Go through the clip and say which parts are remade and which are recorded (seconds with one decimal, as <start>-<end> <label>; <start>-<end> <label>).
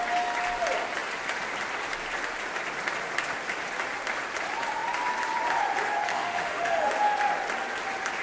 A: 0.0-6.1 recorded; 6.1-6.9 remade; 6.9-8.2 recorded